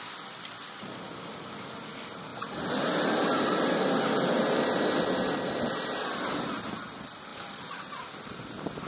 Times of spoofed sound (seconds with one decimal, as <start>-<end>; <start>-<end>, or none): none